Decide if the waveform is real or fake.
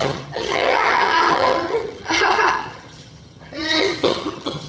fake